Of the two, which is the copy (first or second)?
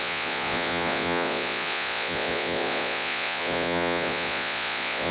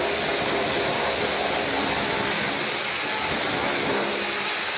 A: first